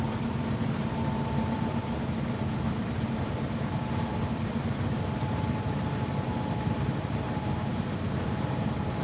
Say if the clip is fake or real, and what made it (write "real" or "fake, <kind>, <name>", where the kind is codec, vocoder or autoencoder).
fake, vocoder, BigVGAN v2